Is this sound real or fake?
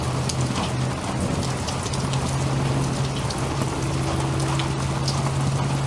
real